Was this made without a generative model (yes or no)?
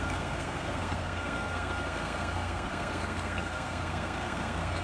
no